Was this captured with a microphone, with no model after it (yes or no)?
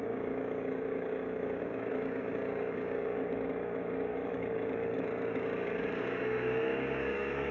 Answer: no